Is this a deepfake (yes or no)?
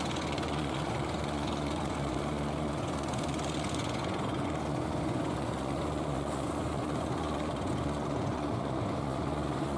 yes